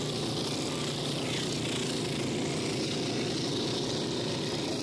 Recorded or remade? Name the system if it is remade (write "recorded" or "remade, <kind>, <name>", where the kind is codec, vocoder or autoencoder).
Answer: recorded